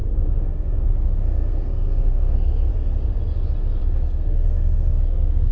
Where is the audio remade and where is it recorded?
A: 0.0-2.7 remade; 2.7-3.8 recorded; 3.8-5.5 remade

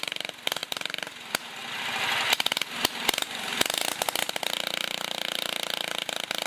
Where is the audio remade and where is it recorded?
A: 0.0-0.6 recorded; 0.6-1.7 remade; 1.7-6.5 recorded

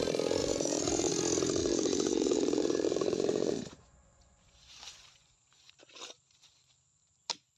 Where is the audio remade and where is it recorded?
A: 0.0-0.4 recorded; 0.4-1.1 remade; 1.1-1.6 recorded; 1.6-5.7 remade; 5.7-7.6 recorded

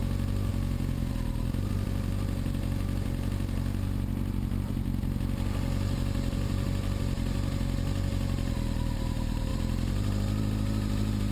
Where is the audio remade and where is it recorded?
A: 0.0-0.5 recorded; 0.5-1.1 remade; 1.1-11.3 recorded